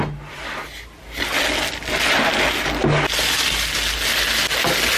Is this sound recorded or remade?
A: recorded